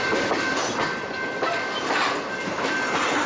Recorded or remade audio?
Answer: recorded